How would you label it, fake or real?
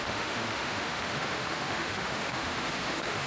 fake